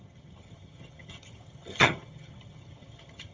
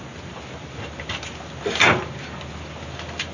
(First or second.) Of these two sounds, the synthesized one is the first